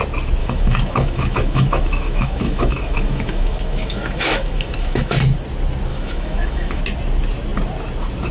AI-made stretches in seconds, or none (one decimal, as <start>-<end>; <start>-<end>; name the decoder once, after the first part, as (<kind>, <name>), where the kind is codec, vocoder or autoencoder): 0.4-5.2 (autoencoder, DAC-VAE); 5.9-6.8